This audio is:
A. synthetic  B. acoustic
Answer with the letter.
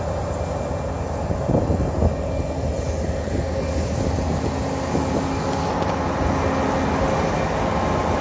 B